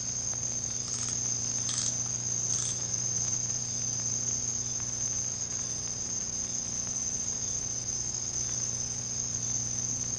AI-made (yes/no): no